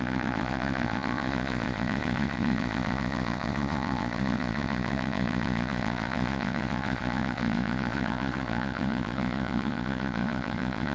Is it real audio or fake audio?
fake